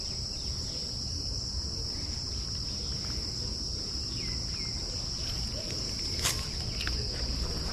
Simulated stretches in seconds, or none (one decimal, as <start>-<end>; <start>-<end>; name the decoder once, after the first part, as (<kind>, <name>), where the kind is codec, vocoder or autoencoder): none

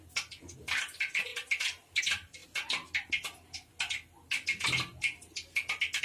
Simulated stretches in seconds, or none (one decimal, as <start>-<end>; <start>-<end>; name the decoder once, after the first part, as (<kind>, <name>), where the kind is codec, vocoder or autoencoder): 1.3-2.0 (vocoder, BigVGAN v2)

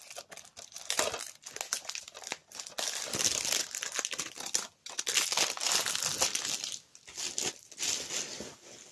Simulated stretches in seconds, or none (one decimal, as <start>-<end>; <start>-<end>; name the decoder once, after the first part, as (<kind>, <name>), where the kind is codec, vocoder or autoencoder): none

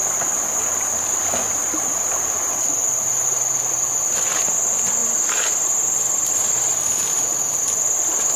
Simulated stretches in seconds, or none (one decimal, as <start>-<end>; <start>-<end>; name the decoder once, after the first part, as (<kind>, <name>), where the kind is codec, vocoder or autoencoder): none

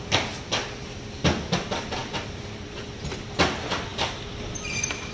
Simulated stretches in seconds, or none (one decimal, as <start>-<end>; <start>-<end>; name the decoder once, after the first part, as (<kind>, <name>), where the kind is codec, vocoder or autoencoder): 2.0-2.7 (vocoder, BigVGAN v2); 3.9-4.5

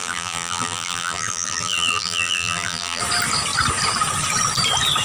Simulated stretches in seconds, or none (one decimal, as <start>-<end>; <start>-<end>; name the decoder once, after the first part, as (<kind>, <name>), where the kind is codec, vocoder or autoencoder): 0.0-3.0 (vocoder, BigVGAN v2)